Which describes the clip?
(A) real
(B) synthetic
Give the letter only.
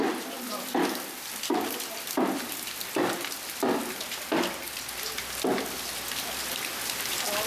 B